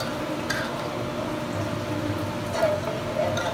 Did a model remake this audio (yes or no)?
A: no